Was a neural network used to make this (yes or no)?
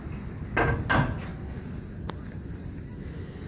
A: no